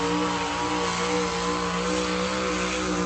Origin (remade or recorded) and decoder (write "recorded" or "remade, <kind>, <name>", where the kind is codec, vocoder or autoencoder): recorded